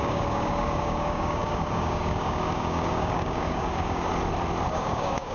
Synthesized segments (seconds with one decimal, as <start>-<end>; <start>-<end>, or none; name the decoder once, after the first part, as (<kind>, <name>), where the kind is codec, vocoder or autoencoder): 0.0-4.1 (codec, DAC); 4.7-5.3